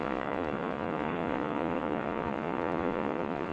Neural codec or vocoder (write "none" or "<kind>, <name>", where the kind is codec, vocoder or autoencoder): vocoder, Vocos